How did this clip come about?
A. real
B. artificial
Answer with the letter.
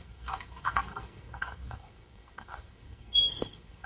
B